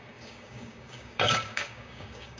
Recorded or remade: remade